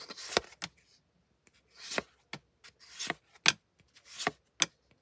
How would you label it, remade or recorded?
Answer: recorded